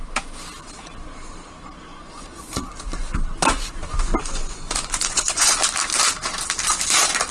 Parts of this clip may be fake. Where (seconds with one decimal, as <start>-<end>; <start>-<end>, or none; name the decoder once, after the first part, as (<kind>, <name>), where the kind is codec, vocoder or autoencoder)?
1.9-2.7 (vocoder, Vocos); 4.2-5.5